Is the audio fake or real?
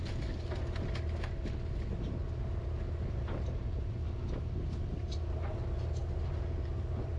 real